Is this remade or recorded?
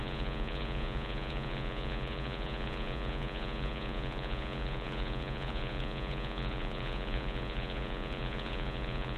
remade